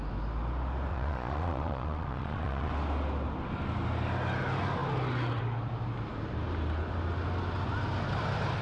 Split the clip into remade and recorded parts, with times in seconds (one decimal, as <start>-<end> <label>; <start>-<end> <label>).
0.0-0.9 recorded; 0.9-2.7 remade; 2.7-8.6 recorded